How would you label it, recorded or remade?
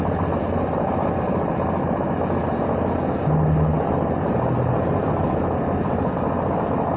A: recorded